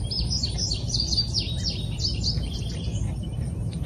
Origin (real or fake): fake